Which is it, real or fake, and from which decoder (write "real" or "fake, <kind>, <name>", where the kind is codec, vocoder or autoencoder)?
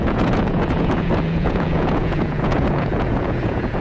fake, vocoder, Vocos